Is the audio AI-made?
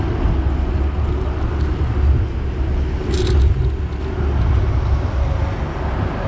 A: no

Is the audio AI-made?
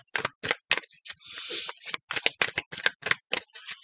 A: no